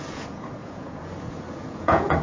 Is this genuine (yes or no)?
no